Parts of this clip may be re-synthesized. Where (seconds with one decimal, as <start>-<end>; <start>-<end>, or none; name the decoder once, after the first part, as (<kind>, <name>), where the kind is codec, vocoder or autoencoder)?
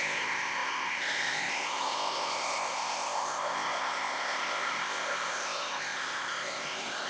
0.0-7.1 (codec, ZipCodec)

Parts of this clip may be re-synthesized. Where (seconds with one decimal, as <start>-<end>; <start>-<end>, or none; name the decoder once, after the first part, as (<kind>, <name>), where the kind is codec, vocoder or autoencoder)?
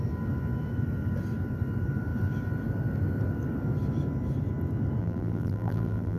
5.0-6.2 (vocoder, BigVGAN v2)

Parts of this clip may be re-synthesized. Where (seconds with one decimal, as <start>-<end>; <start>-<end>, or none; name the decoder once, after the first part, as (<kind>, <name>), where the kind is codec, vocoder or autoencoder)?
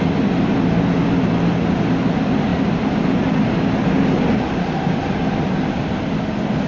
none